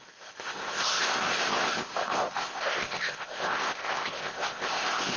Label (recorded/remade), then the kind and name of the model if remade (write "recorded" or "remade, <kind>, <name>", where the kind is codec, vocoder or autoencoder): remade, codec, ZipCodec